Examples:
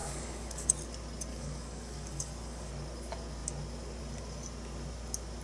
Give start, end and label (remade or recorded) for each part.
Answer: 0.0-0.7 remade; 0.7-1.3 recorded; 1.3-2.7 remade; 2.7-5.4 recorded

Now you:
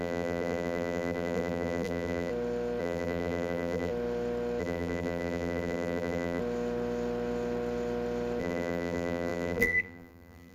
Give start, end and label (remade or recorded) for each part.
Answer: 0.0-2.3 remade; 2.3-2.8 recorded; 2.8-3.9 remade; 3.9-4.6 recorded; 4.6-6.4 remade; 6.4-8.4 recorded; 8.4-10.5 remade

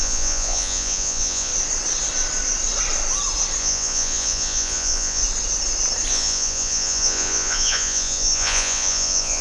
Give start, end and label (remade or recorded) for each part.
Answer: 0.0-1.5 remade; 1.5-3.6 recorded; 3.6-5.2 remade; 5.2-6.1 recorded; 6.1-9.4 remade

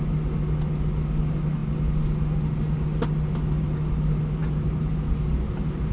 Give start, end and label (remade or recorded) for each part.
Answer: 0.0-4.4 recorded; 4.4-4.9 remade; 4.9-5.9 recorded

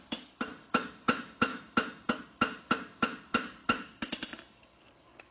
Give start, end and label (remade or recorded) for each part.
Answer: 0.0-1.5 remade; 1.5-2.6 recorded; 2.6-3.6 remade; 3.6-4.6 recorded; 4.6-5.3 remade